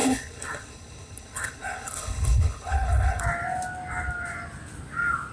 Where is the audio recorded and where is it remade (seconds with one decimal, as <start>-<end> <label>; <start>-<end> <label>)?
0.0-3.2 remade; 3.2-5.3 recorded